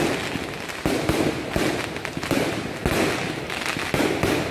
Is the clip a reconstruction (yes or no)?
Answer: no